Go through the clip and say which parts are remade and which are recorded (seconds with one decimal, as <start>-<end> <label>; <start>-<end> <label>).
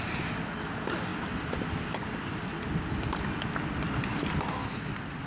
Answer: 0.0-5.3 recorded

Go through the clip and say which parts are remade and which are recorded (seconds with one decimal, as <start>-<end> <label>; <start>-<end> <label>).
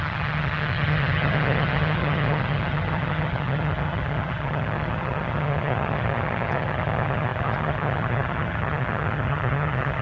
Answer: 0.0-10.0 remade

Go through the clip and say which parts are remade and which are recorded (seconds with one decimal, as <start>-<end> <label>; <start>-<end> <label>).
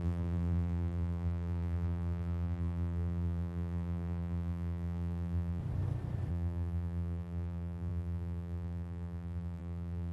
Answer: 0.0-5.6 remade; 5.6-6.3 recorded; 6.3-10.1 remade